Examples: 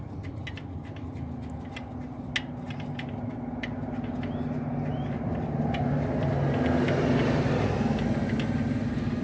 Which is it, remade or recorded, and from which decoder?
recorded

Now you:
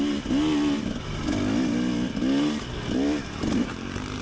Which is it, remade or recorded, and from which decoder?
recorded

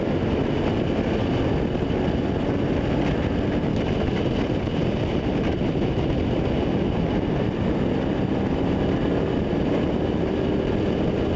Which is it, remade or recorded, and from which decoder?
recorded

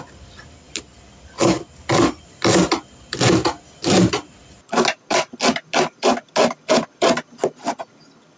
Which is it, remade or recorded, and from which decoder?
recorded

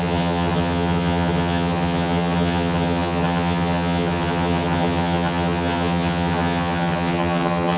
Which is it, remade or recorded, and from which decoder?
remade, vocoder, HiFi-GAN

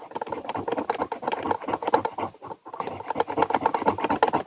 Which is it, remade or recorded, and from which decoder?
recorded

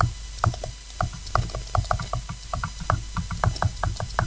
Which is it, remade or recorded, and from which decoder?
recorded